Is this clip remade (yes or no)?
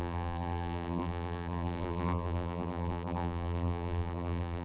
yes